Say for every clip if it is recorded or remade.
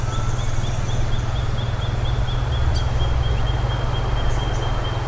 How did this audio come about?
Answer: recorded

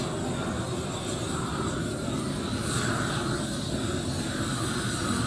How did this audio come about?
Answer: recorded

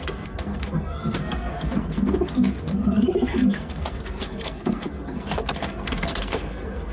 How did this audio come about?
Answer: remade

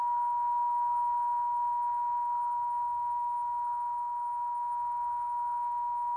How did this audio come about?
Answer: remade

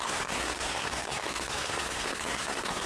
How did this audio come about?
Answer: remade